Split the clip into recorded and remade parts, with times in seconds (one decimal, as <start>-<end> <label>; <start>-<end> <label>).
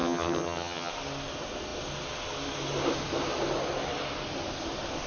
0.0-0.9 remade; 0.9-5.1 recorded